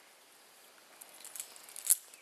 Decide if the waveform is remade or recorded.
recorded